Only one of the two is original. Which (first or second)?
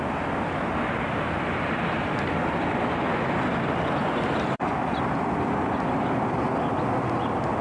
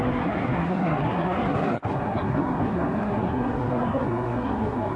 first